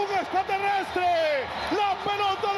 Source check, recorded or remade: recorded